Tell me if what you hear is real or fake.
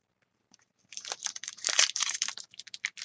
fake